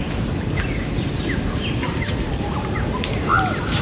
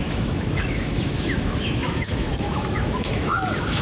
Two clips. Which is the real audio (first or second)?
first